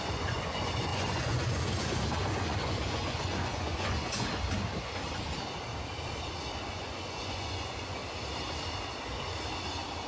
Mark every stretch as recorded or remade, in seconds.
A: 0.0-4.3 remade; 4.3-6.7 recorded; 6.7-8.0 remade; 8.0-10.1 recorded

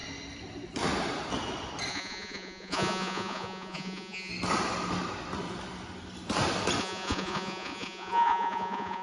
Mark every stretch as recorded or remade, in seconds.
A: 0.0-1.9 recorded; 1.9-4.3 remade; 4.3-6.8 recorded; 6.8-9.0 remade